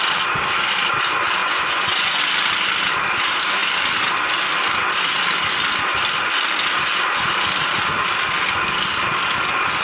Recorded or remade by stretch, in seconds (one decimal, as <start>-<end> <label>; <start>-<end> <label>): 0.0-1.4 recorded; 1.4-2.2 remade; 2.2-9.8 recorded